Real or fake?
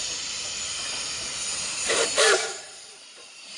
fake